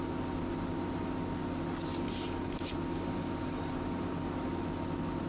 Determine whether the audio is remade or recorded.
recorded